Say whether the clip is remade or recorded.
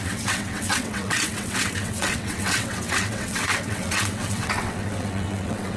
remade